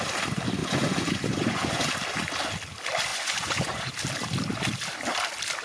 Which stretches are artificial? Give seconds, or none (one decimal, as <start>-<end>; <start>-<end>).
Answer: 0.6-1.9; 3.1-3.9

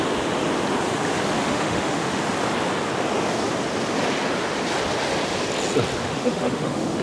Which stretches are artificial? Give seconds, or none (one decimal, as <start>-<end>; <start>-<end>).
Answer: 1.4-2.2; 6.0-7.0

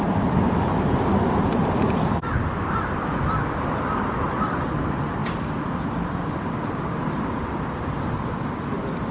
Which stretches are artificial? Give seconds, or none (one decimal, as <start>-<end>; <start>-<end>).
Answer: 0.0-9.1

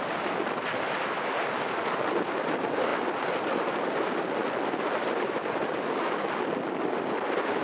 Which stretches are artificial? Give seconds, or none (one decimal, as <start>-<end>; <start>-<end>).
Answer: none